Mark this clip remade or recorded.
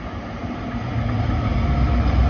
recorded